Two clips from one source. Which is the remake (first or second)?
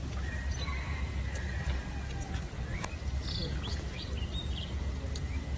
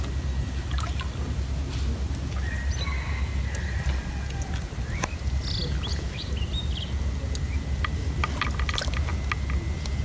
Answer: first